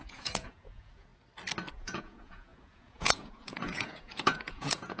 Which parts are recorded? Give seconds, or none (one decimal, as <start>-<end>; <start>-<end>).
1.1-1.7